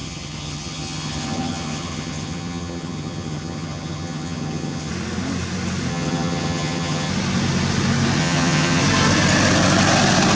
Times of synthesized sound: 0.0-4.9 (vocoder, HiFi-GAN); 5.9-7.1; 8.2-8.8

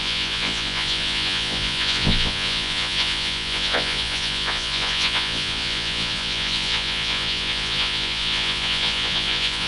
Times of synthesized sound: 0.0-9.7 (vocoder, Vocos)